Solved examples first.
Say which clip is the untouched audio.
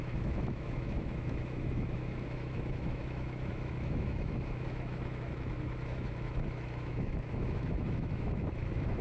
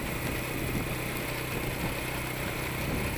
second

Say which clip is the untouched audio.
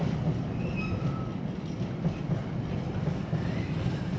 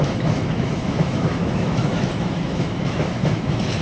first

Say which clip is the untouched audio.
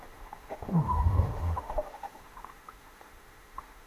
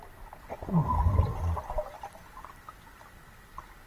second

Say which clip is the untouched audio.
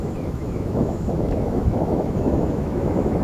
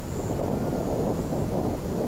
second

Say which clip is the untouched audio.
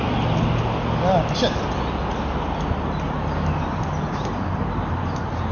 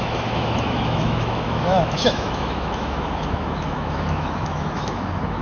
first